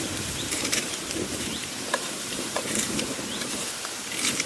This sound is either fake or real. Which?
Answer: fake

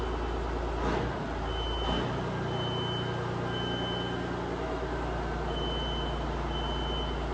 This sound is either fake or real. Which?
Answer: real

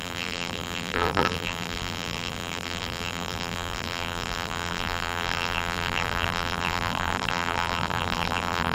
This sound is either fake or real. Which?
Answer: fake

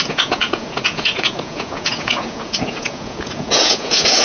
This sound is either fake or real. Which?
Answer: fake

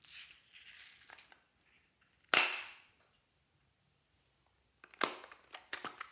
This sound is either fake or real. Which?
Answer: real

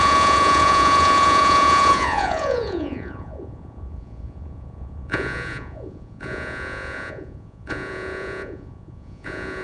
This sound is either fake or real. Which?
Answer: fake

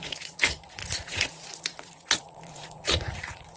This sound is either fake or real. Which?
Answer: fake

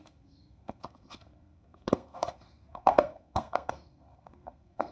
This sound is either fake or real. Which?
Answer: fake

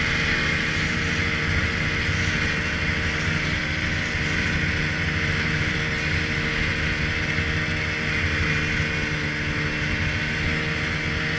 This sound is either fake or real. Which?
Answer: real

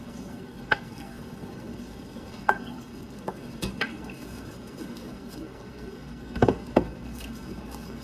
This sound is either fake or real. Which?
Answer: fake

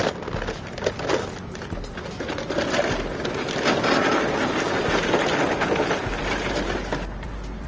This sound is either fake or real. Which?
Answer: real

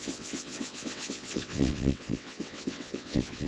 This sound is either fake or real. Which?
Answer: fake